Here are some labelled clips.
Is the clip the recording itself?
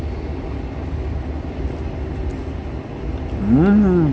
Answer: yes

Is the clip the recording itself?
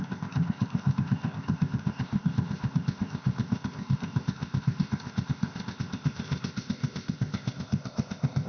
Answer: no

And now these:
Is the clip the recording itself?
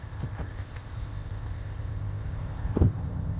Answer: no